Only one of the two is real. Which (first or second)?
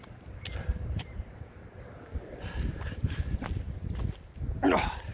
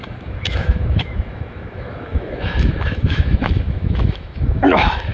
first